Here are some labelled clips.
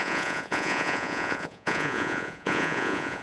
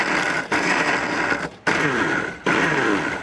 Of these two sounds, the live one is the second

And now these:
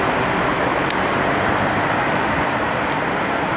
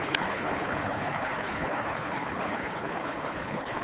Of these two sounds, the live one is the first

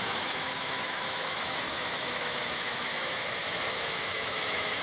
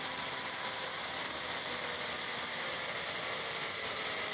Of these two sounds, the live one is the second